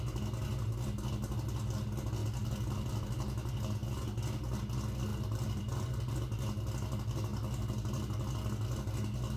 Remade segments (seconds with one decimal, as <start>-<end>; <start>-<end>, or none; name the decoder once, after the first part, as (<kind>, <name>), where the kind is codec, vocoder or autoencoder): 2.2-3.1 (vocoder, BigVGAN v2); 5.1-6.1